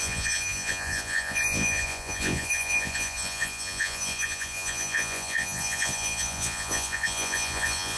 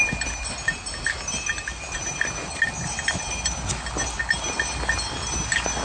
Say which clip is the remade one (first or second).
first